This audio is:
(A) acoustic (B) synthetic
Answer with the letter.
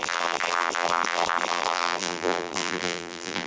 B